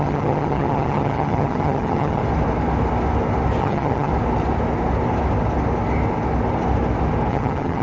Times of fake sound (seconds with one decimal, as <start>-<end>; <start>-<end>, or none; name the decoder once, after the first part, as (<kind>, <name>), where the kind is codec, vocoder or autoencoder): 0.0-2.2 (vocoder, HiFi-GAN); 3.6-4.1; 7.3-7.8